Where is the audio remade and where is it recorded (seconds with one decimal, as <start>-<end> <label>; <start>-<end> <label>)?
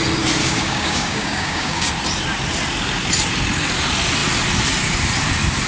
0.0-0.4 recorded; 0.4-1.9 remade; 1.9-5.7 recorded